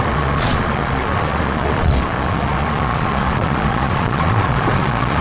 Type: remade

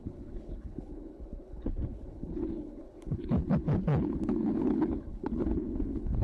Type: remade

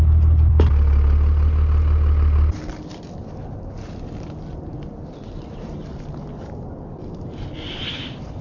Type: recorded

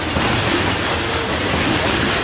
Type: recorded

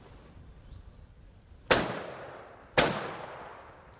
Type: recorded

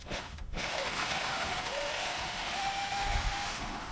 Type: remade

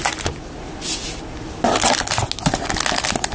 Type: recorded